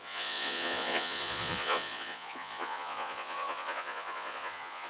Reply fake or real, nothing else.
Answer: fake